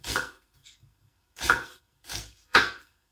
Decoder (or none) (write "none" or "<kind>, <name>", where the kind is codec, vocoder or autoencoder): codec, SNAC